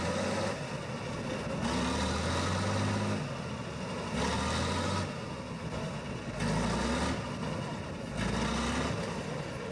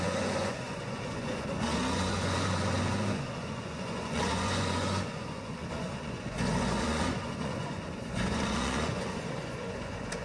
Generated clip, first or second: second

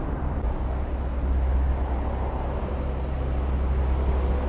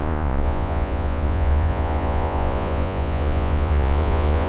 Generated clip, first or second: second